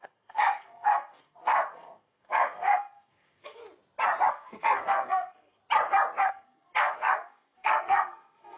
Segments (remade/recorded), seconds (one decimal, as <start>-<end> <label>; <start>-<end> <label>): 0.0-3.6 remade; 3.6-4.3 recorded; 4.3-5.6 remade; 5.6-6.3 recorded; 6.3-8.6 remade